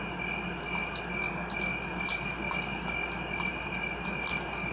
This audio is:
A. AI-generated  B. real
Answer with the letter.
B